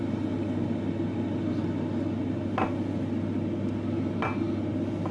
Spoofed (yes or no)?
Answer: no